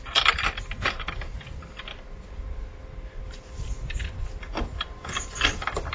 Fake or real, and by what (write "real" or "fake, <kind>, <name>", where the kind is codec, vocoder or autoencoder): real